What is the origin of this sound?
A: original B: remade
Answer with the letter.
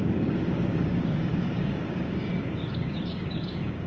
B